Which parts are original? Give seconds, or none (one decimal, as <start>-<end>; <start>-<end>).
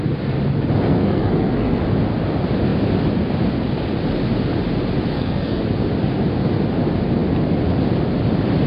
0.0-0.9; 1.8-5.1; 5.6-8.7